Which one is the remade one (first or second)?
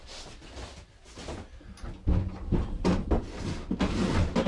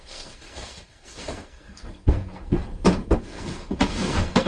second